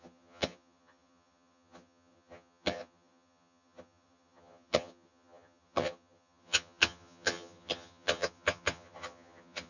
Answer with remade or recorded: remade